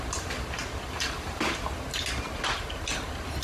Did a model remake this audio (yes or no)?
no